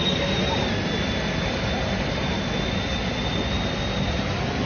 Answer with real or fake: real